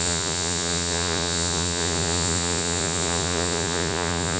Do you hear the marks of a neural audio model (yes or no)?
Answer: yes